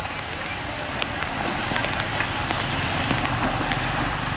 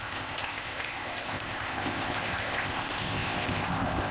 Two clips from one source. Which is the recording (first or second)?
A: first